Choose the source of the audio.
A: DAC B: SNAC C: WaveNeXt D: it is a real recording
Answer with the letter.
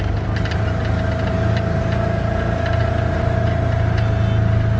D